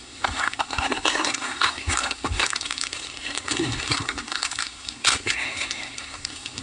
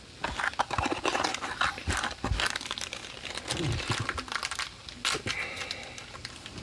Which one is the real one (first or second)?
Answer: second